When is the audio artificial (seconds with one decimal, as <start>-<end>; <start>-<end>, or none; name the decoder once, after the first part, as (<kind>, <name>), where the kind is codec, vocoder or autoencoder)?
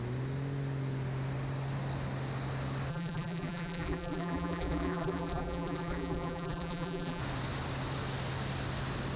2.9-7.2 (vocoder, BigVGAN v2)